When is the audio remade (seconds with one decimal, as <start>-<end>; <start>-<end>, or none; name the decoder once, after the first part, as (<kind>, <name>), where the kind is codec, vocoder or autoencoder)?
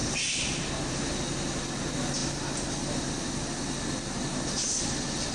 none